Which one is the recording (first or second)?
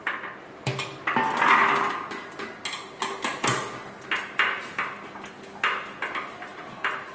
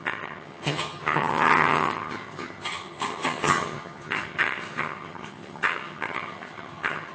first